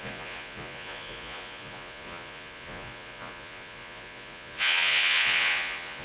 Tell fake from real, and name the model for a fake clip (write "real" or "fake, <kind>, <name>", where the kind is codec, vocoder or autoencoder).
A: fake, vocoder, Vocos